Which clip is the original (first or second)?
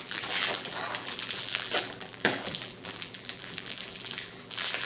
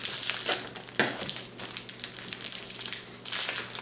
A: second